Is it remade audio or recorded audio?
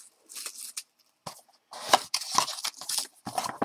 recorded